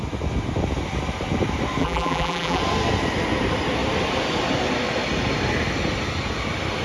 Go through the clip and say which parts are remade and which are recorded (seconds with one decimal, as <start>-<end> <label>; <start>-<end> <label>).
0.0-1.8 recorded; 1.8-2.6 remade; 2.6-6.8 recorded